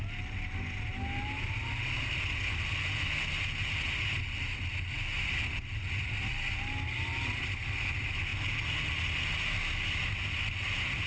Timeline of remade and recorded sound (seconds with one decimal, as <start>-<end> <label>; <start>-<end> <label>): 0.0-11.1 recorded